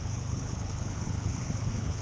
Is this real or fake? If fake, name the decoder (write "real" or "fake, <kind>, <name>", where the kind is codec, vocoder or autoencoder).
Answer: fake, codec, HILCodec